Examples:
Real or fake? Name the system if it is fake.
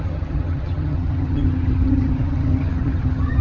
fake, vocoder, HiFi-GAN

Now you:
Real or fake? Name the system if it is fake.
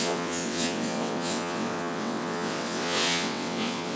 fake, vocoder, WaveNeXt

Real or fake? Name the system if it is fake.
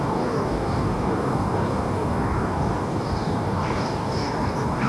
fake, codec, DAC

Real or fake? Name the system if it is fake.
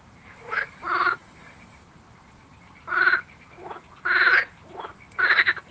fake, vocoder, BigVGAN v2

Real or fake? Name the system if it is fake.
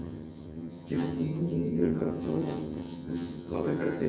fake, vocoder, HiFi-GAN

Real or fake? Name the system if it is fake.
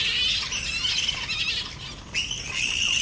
real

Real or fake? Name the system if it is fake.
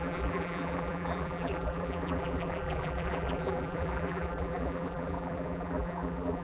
fake, vocoder, BigVGAN v2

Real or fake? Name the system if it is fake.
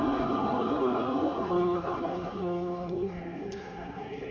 fake, codec, SNAC